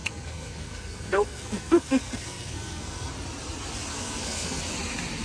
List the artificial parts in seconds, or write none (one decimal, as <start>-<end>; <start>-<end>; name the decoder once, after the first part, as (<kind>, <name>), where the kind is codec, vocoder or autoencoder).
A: 0.0-3.1 (codec, SNAC); 3.9-4.6